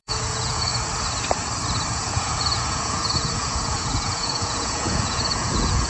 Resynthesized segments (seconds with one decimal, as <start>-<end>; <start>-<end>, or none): 0.0-0.7; 1.9-5.9